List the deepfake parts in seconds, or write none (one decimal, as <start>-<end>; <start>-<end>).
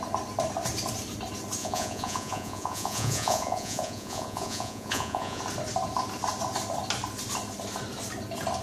1.6-5.4